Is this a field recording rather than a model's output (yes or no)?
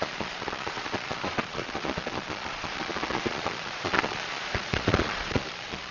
no